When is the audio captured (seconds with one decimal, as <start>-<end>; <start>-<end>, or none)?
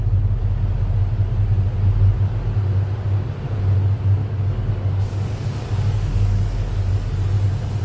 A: 0.0-4.2; 6.9-7.8